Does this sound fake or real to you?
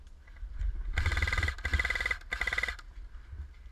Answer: real